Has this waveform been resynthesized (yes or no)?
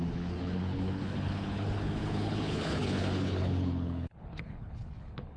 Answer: yes